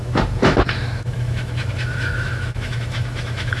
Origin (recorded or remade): remade